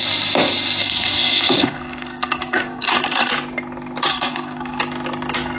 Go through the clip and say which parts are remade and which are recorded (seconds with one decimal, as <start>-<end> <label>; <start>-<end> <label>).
0.0-0.8 recorded; 0.8-3.3 remade; 3.3-4.1 recorded; 4.1-4.8 remade; 4.8-5.6 recorded